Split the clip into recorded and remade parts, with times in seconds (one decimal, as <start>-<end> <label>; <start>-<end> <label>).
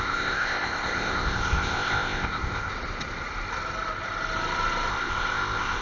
0.0-2.7 remade; 2.7-4.9 recorded; 4.9-5.8 remade